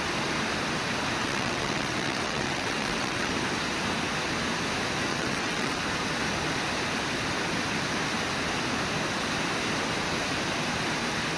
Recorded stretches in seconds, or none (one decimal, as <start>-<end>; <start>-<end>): 0.0-1.2; 3.3-5.1; 5.8-11.4